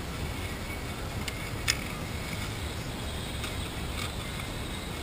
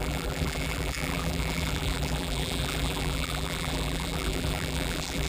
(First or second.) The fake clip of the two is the second